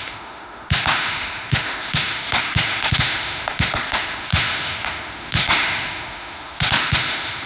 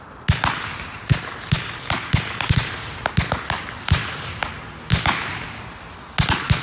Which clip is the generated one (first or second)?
first